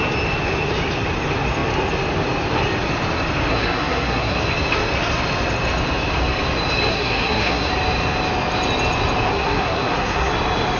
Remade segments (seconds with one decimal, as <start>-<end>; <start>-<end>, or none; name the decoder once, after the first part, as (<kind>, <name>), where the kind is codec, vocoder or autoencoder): 3.5-4.4 (codec, SNAC); 6.9-7.7; 9.3-10.3